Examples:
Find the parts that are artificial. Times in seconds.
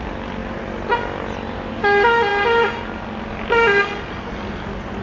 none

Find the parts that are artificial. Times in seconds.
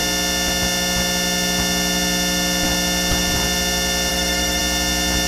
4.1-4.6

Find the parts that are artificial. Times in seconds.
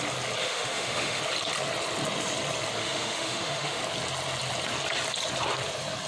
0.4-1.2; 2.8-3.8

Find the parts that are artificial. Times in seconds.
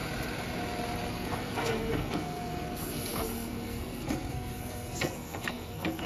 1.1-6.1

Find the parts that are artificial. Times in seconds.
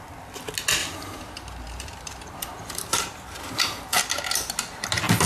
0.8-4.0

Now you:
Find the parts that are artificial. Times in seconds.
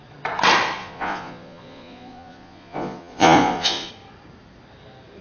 0.8-3.9